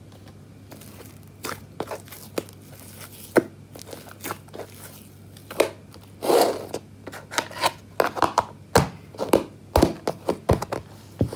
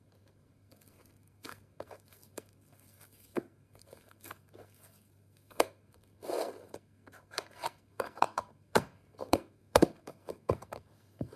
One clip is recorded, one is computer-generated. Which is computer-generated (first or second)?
second